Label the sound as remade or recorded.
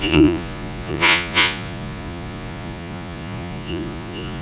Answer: remade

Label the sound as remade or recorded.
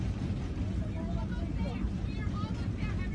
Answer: recorded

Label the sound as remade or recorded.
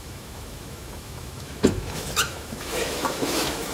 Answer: remade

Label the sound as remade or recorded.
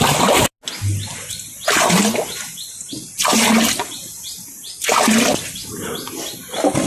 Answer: recorded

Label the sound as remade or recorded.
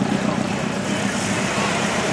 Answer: remade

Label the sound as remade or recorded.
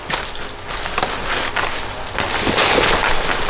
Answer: recorded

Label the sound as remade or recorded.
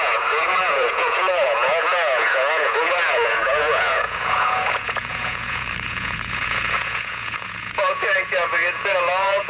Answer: remade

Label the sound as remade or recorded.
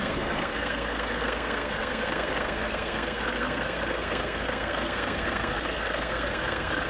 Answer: remade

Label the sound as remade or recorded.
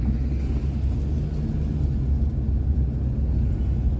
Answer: recorded